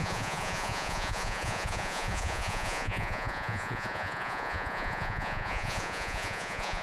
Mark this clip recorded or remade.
remade